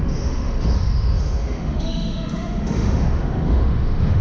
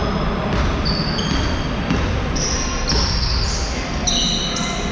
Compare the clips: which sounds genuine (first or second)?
second